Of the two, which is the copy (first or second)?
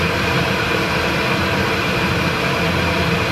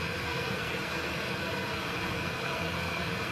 second